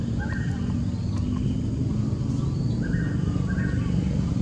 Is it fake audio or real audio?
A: real